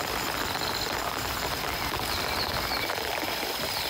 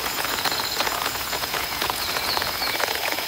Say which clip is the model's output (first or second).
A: second